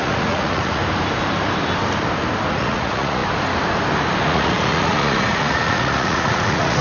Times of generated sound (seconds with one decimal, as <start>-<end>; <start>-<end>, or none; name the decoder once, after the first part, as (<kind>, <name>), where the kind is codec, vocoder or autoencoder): 0.0-0.8 (vocoder, Vocos); 2.5-3.2; 4.2-6.8